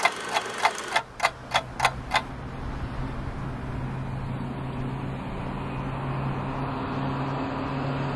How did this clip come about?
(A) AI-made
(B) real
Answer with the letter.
B